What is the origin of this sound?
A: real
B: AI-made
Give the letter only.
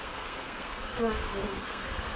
B